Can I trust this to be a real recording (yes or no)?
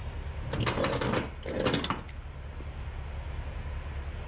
yes